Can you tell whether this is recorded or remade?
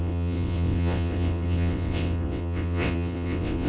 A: remade